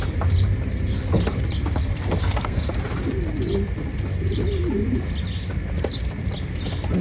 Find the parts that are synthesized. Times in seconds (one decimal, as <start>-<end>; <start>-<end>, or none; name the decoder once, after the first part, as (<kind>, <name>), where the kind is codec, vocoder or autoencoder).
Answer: 2.2-2.7 (codec, SNAC)